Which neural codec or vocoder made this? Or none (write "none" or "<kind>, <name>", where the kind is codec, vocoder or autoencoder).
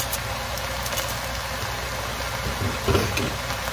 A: none